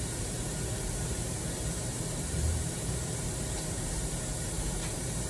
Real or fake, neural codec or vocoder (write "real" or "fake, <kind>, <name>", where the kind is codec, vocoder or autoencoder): fake, vocoder, BigVGAN v2